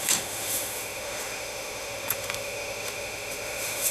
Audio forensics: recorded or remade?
remade